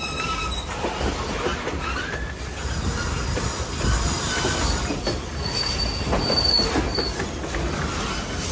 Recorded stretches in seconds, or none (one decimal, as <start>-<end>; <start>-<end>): 0.0-8.5